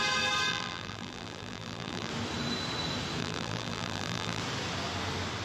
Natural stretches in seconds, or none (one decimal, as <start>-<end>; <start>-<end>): 0.0-0.5; 2.1-3.2; 4.4-5.4

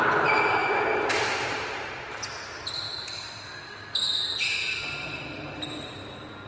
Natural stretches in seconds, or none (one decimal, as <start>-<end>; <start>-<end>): 0.0-0.6; 1.9-2.5; 4.8-6.5

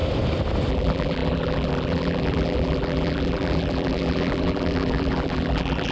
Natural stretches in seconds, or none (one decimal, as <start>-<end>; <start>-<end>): 0.0-0.7

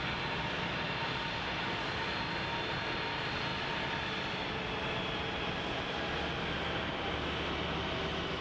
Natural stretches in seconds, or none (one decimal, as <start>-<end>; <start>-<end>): 0.0-8.4

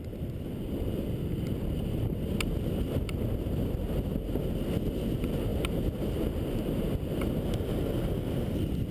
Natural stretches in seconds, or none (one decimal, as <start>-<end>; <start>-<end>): 0.0-8.9

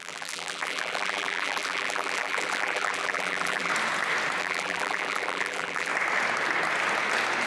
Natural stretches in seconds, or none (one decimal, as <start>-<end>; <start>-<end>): 3.7-4.4; 5.9-7.5

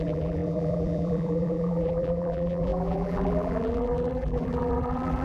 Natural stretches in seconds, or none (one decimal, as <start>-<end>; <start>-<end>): none